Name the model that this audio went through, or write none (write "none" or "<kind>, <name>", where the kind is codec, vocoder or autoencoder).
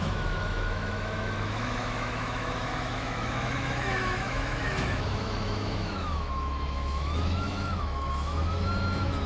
autoencoder, DAC-VAE